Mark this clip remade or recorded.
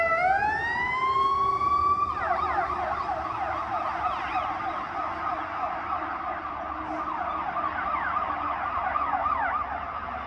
recorded